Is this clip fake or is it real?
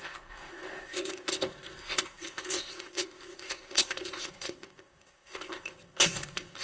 fake